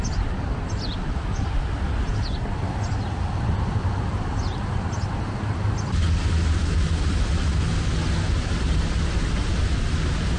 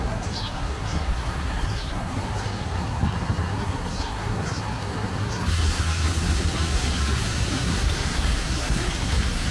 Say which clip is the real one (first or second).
first